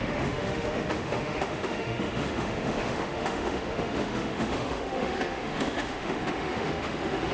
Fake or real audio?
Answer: fake